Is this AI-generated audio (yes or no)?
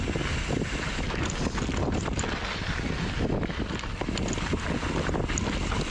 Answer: no